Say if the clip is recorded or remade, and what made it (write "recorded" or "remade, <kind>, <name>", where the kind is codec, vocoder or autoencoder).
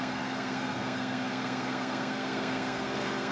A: remade, codec, SNAC